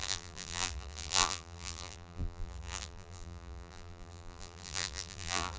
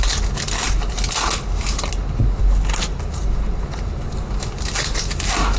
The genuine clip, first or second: second